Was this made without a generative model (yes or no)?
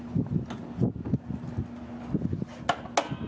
yes